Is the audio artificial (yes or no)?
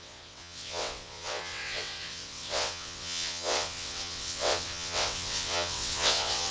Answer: yes